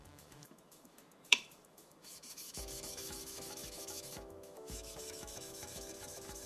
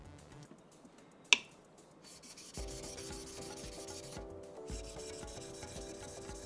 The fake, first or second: first